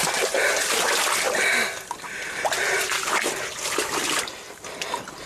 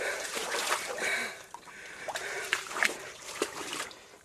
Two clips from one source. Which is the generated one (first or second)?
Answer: second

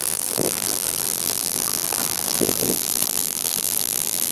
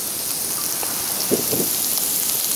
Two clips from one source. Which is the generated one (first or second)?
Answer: first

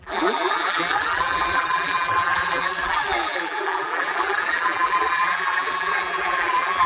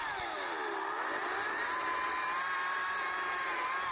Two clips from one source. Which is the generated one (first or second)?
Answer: first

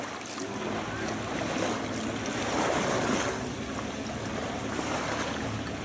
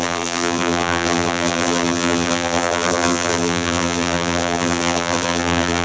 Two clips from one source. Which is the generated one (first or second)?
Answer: second